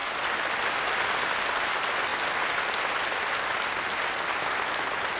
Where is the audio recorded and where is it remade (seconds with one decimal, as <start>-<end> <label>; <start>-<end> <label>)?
0.0-5.2 recorded